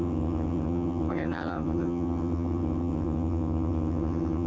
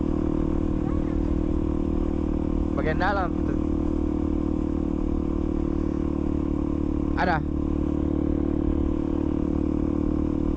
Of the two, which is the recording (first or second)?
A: second